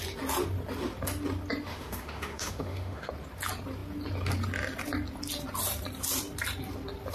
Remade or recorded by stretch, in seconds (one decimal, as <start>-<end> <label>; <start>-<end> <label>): 0.0-1.7 recorded; 1.7-3.1 remade; 3.1-7.1 recorded